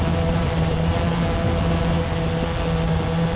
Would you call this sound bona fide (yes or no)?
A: yes